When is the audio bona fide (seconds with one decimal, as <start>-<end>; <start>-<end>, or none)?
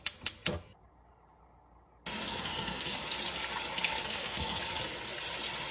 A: 0.0-2.3; 3.0-4.0; 4.6-5.7